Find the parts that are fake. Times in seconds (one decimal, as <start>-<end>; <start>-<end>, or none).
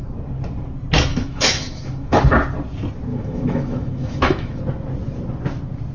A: 1.1-2.2; 3.1-4.6